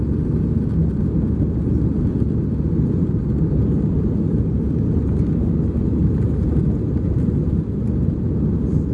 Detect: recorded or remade recorded